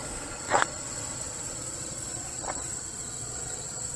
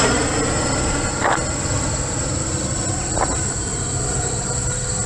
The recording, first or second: second